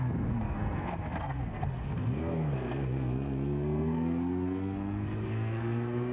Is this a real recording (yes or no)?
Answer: no